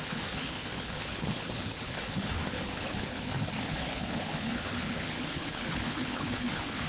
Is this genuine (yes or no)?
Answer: no